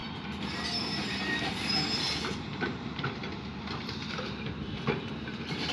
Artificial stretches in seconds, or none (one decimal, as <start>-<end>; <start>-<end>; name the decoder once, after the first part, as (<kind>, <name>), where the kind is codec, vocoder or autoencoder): 1.0-3.2 (vocoder, BigVGAN v2); 3.8-5.7